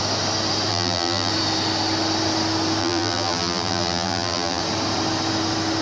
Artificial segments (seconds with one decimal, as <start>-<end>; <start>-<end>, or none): 0.7-1.3; 2.8-4.6